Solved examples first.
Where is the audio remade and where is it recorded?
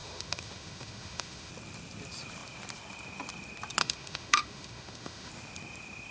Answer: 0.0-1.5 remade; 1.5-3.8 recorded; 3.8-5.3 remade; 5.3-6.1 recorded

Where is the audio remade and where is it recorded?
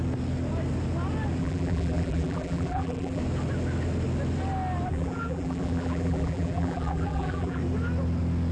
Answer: 0.0-1.4 recorded; 1.4-3.2 remade; 3.2-4.9 recorded; 4.9-7.6 remade; 7.6-8.5 recorded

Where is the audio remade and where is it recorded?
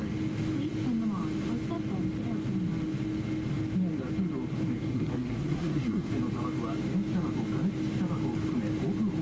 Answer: 0.0-4.9 recorded; 4.9-6.1 remade; 6.1-9.2 recorded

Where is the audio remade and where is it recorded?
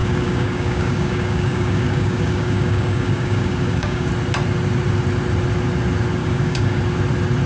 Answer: 0.0-4.1 remade; 4.1-6.2 recorded; 6.2-6.8 remade; 6.8-7.5 recorded